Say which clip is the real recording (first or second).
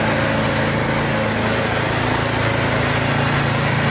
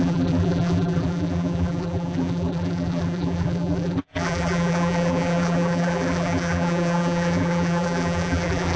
first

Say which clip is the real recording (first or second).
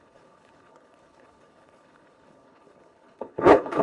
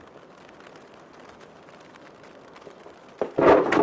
second